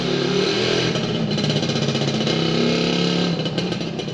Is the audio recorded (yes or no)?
yes